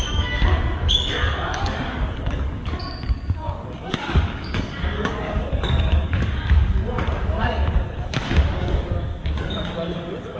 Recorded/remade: remade